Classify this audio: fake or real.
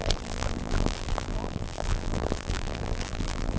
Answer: fake